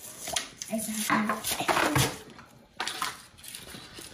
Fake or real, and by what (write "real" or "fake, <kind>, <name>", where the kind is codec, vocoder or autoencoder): real